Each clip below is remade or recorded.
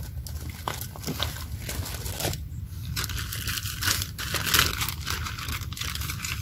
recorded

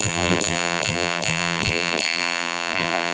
remade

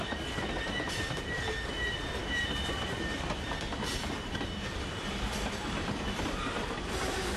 remade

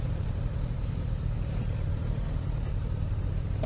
remade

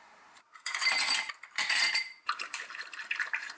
remade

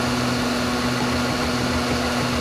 recorded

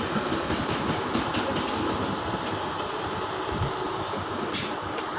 remade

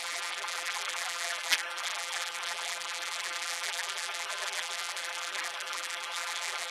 remade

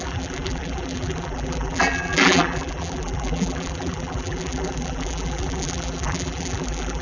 remade